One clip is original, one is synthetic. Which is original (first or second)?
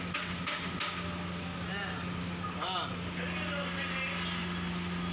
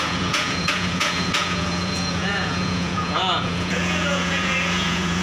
first